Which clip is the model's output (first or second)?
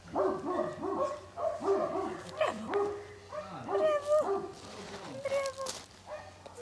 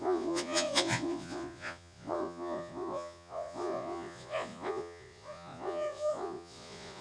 second